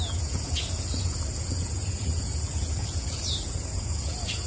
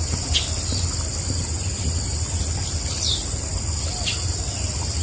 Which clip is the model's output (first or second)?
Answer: first